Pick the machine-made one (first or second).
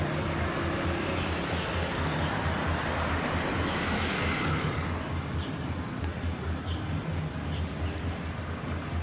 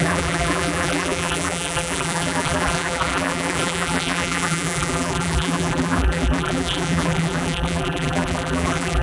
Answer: second